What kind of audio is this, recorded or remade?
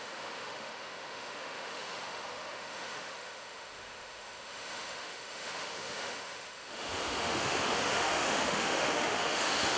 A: remade